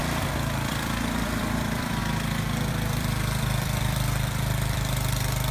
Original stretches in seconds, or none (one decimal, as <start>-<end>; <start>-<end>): 2.0-2.7